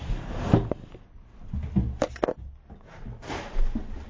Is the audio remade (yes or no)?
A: no